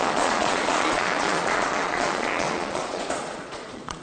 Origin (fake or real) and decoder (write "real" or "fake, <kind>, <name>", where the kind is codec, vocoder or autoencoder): fake, vocoder, Vocos